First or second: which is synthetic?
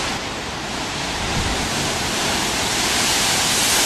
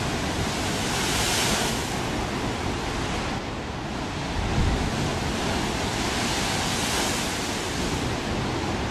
first